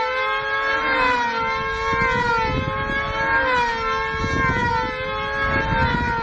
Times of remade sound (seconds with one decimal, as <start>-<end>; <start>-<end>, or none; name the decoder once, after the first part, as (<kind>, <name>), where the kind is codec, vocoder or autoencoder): none